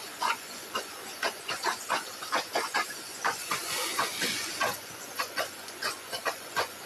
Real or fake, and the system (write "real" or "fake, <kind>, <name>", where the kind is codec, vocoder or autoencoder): fake, vocoder, Vocos